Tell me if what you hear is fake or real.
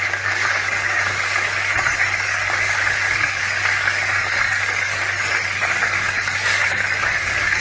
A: fake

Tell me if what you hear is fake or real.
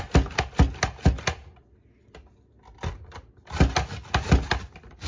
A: real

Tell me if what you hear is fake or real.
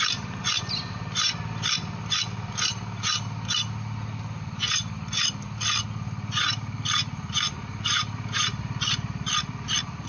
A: real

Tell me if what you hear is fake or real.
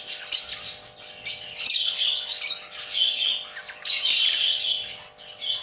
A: real